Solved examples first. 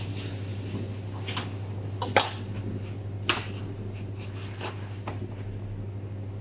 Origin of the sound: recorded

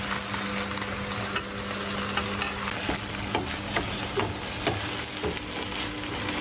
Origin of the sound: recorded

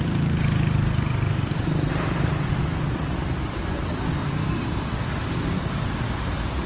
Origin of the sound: remade